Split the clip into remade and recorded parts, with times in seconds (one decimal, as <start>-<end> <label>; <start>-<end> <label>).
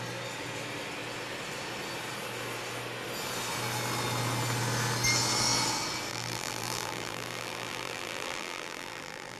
0.0-6.1 recorded; 6.1-9.4 remade